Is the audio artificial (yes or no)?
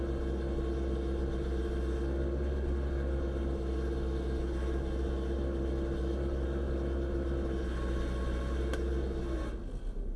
no